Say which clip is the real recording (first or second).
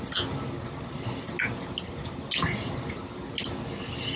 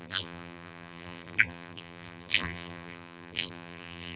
first